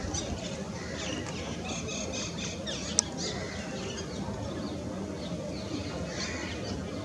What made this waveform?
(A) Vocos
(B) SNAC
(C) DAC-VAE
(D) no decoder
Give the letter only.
D